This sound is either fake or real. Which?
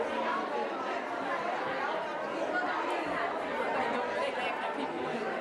real